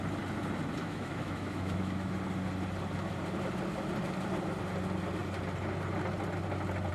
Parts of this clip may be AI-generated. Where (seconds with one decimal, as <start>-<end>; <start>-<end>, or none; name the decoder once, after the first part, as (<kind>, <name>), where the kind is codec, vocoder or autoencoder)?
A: 0.8-2.1 (autoencoder, DAC-VAE)